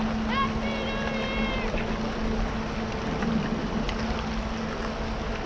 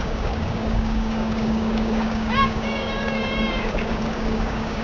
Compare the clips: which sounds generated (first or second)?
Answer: second